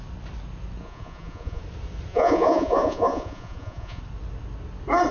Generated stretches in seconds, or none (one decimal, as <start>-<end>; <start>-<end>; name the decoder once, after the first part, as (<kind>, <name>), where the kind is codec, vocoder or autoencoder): 0.8-1.6 (vocoder, Vocos); 2.1-4.0